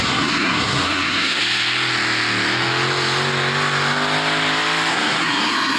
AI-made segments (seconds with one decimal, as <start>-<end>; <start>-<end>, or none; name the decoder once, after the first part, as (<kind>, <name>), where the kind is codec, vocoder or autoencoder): 0.0-1.4 (codec, SNAC); 4.9-5.8